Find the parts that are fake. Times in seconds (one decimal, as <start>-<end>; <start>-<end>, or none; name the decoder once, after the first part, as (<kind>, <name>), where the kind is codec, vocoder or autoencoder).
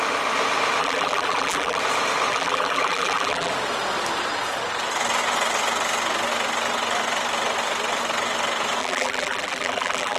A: 0.8-1.8 (vocoder, BigVGAN v2); 2.3-3.5; 8.8-10.2